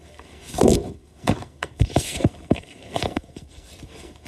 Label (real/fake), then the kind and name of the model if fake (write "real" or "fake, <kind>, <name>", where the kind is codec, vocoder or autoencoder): fake, codec, SNAC